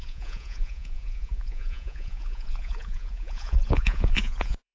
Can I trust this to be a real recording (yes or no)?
no